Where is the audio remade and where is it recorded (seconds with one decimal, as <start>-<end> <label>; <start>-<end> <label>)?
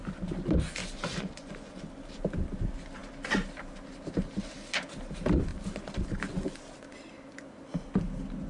0.0-0.8 recorded; 0.8-1.9 remade; 1.9-8.5 recorded